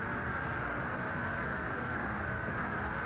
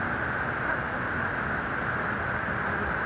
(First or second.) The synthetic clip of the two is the first